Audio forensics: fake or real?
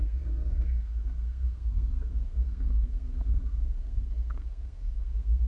fake